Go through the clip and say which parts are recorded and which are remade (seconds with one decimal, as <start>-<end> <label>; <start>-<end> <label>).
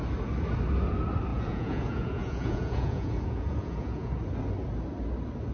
0.0-1.3 recorded; 1.3-4.2 remade; 4.2-5.5 recorded